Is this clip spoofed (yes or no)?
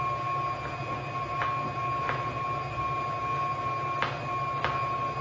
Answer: no